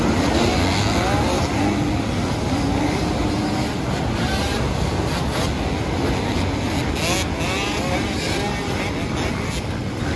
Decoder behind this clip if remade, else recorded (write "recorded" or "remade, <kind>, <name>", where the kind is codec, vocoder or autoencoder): recorded